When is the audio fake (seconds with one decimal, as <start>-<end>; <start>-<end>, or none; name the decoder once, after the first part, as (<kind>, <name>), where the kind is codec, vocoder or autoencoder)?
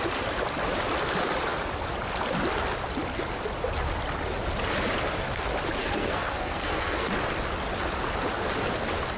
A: 5.8-7.1 (codec, SNAC)